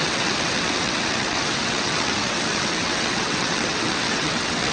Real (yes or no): no